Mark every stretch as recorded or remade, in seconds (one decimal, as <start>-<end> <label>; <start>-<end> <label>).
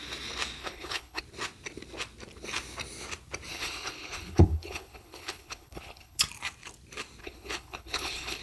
0.0-0.6 recorded; 0.6-1.2 remade; 1.2-3.5 recorded; 3.5-6.2 remade; 6.2-7.2 recorded; 7.2-8.4 remade